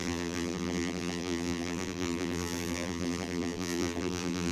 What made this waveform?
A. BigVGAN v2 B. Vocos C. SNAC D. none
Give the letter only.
A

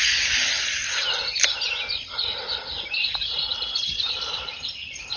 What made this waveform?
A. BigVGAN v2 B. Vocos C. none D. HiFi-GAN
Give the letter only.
C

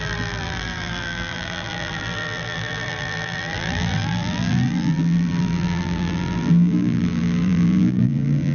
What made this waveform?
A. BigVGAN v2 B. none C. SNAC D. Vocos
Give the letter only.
A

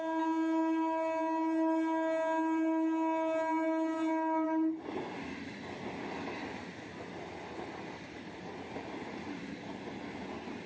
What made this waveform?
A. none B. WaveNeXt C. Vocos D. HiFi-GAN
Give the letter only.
A